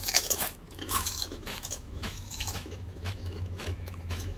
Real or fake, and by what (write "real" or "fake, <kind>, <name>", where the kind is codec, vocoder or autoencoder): fake, autoencoder, DAC-VAE